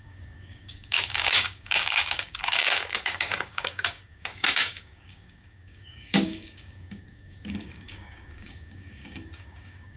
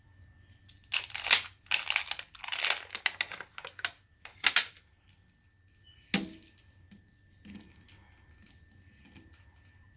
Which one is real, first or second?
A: second